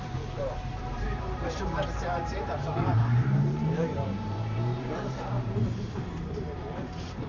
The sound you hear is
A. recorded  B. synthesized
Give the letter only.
B